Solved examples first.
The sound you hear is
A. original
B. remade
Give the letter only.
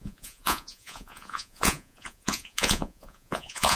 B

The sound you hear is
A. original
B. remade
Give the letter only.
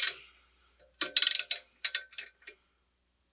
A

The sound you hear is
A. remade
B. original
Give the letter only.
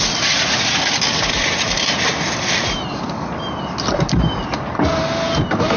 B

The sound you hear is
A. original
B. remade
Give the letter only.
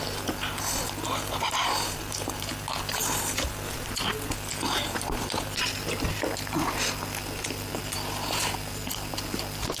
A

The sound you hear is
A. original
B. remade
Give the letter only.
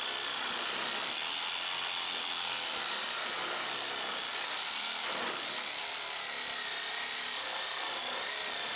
A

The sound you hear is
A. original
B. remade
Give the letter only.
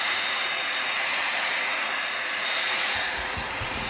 B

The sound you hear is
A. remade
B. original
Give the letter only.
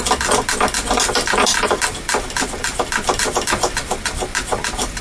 B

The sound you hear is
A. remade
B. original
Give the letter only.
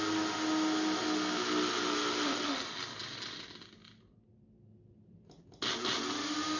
B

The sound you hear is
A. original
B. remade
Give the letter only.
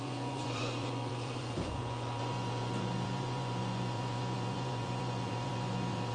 B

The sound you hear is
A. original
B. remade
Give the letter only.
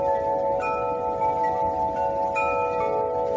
A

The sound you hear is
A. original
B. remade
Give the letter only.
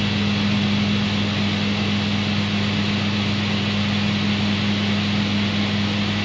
A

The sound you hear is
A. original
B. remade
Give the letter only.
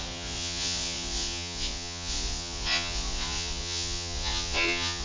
B